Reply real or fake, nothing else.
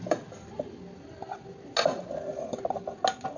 real